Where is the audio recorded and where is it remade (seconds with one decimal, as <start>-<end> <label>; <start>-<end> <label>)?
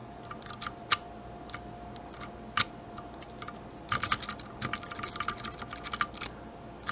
0.0-6.9 recorded